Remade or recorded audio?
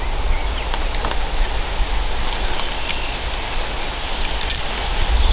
recorded